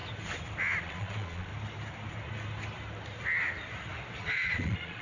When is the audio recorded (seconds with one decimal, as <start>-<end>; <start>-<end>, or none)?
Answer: 0.0-0.8; 1.5-4.2